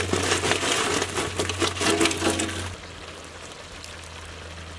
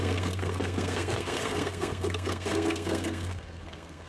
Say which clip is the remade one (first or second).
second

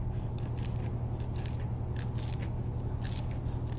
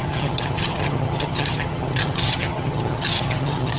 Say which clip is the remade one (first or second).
second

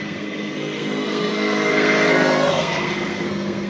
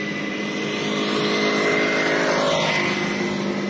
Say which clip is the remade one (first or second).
first